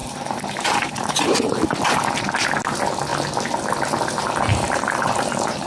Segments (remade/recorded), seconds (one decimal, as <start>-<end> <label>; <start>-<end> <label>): 0.0-1.6 remade; 1.6-4.5 recorded; 4.5-5.7 remade